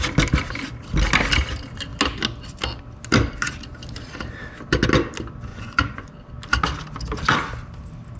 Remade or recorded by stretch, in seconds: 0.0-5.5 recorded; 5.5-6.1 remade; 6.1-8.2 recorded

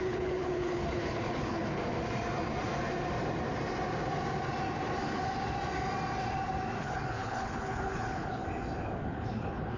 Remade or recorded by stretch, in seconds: 0.0-1.8 remade; 1.8-6.8 recorded; 6.8-8.4 remade; 8.4-9.0 recorded; 9.0-9.8 remade

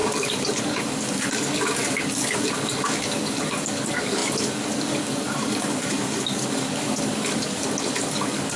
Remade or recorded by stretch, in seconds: 0.0-8.6 remade

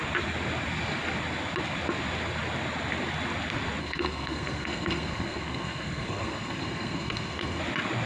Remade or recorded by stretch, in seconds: 0.0-3.8 recorded; 3.8-7.6 remade; 7.6-8.1 recorded

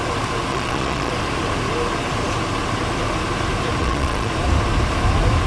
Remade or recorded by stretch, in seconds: 0.0-0.5 recorded; 0.5-1.1 remade; 1.1-3.8 recorded; 3.8-4.3 remade; 4.3-5.5 recorded

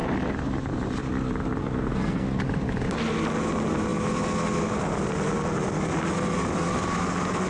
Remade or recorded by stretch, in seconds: 0.0-1.6 recorded; 1.6-2.4 remade; 2.4-7.5 recorded

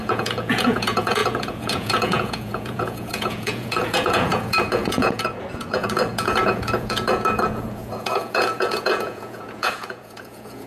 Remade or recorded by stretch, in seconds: 0.0-10.7 remade

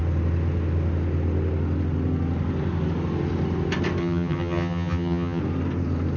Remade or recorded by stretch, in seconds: 0.0-4.0 recorded; 4.0-5.4 remade; 5.4-6.2 recorded